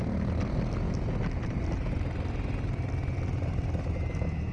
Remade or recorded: recorded